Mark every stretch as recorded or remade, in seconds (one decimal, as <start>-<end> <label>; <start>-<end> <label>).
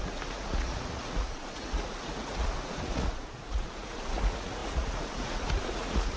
0.0-6.2 remade